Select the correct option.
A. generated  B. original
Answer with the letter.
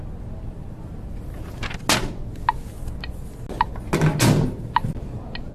B